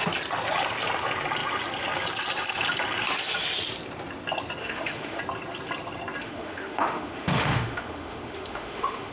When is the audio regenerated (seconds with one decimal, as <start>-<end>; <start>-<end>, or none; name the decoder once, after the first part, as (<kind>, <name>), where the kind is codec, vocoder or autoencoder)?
4.6-5.2 (autoencoder, DAC-VAE); 6.2-9.1